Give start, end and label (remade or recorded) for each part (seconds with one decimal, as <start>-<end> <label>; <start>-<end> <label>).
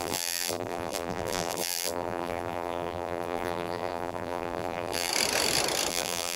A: 0.0-5.1 remade; 5.1-5.9 recorded; 5.9-6.4 remade